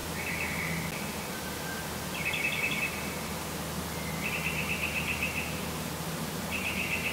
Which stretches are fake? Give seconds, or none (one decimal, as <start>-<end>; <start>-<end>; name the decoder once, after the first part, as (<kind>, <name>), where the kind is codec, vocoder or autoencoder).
none